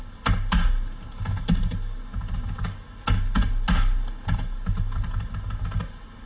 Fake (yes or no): no